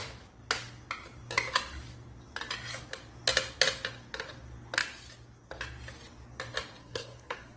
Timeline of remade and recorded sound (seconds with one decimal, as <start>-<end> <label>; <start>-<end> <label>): 0.0-6.8 recorded; 6.8-7.6 remade